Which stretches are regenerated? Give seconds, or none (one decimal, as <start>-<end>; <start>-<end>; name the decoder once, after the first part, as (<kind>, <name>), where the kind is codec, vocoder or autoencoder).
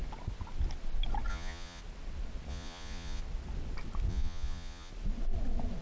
1.3-1.8 (vocoder, Vocos); 2.5-3.2; 4.1-4.9